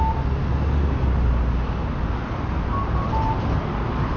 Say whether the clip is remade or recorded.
recorded